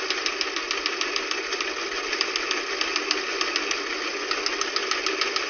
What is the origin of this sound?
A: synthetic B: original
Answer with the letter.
B